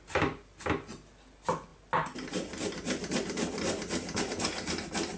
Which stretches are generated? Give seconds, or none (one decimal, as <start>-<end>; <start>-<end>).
none